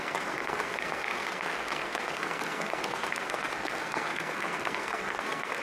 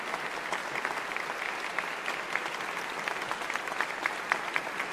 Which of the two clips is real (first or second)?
second